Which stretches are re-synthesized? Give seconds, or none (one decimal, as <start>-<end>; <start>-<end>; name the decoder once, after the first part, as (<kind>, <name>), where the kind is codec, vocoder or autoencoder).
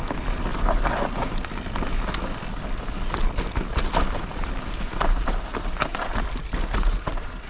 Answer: none